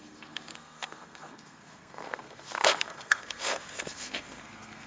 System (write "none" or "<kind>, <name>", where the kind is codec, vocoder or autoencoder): codec, SNAC